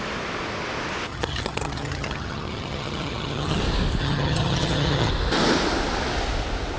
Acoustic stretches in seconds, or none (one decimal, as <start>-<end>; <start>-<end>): 0.0-1.1; 3.6-4.0; 5.1-6.8